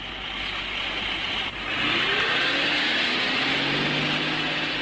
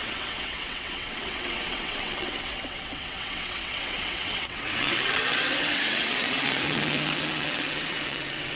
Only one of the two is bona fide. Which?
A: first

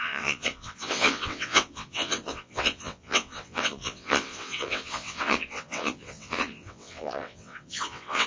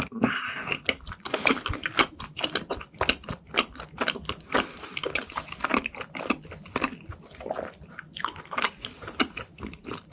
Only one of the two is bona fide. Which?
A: second